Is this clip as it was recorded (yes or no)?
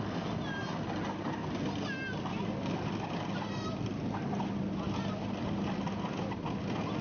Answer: yes